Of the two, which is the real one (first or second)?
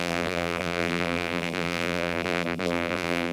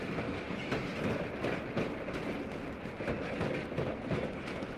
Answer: second